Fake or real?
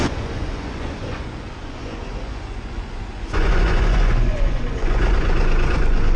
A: fake